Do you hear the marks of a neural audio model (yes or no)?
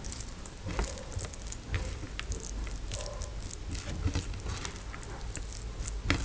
no